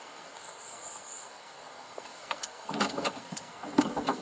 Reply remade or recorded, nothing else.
remade